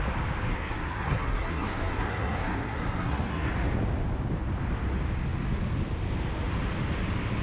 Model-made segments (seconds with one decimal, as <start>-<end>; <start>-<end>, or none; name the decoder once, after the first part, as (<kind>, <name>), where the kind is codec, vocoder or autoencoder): 0.5-3.5 (codec, SNAC)